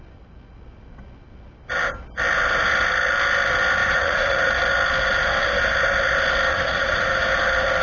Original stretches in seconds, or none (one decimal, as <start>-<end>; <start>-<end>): 0.0-3.8; 4.5-6.5; 7.2-7.8